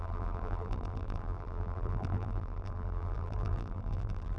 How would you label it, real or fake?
fake